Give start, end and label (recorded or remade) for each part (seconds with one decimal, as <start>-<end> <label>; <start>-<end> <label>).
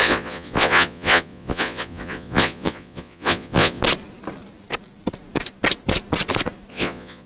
0.0-3.8 remade; 3.8-6.7 recorded; 6.7-7.3 remade